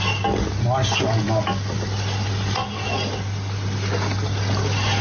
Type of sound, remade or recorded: recorded